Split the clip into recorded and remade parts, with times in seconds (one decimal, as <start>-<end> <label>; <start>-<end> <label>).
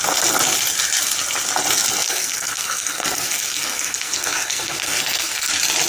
0.0-2.0 recorded; 2.0-5.5 remade; 5.5-5.9 recorded